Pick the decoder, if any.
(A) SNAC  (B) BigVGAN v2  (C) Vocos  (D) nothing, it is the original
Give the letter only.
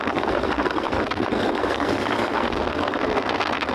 A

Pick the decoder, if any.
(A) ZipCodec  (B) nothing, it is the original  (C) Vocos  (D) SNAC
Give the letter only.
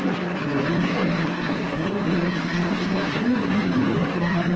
D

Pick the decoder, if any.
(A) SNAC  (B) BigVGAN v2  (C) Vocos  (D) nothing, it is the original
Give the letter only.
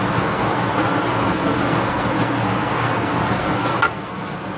A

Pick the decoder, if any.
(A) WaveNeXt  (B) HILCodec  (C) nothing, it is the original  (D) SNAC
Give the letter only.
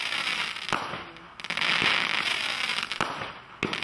C